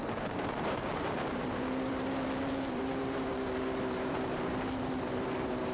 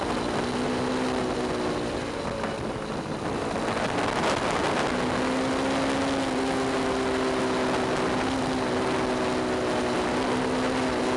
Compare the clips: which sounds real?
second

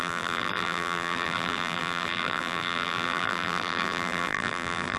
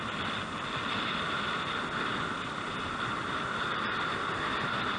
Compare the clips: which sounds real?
second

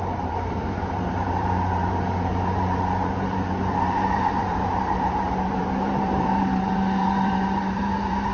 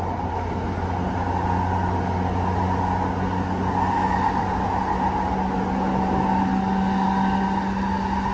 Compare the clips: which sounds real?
second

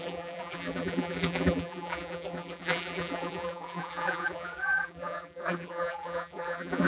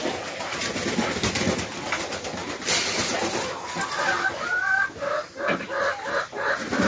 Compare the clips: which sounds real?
second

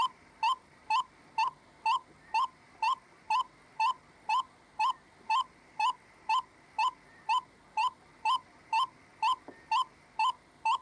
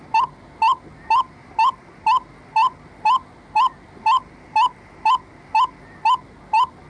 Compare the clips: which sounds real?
second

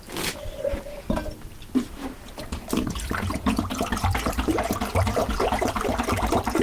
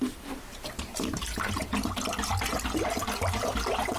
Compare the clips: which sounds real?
second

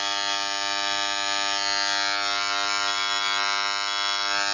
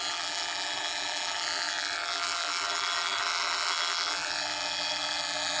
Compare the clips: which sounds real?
first